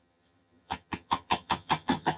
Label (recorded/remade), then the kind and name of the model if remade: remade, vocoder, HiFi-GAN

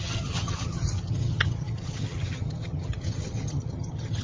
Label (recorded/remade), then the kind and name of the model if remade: remade, vocoder, HiFi-GAN